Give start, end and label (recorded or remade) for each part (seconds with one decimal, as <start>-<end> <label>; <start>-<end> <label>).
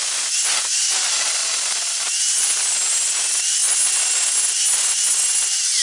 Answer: 0.0-5.8 recorded